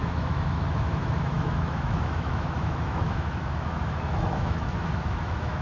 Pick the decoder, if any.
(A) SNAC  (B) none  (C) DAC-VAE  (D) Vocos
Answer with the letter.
C